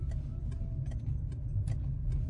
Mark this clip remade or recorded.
recorded